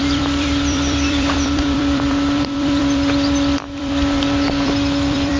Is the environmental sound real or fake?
fake